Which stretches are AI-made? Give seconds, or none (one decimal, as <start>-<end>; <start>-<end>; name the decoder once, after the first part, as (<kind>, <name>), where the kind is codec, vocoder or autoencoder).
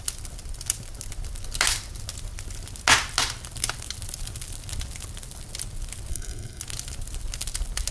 6.1-6.6 (codec, SNAC)